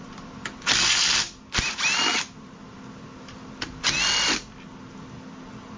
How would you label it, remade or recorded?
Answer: recorded